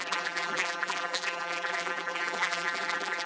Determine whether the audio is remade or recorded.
remade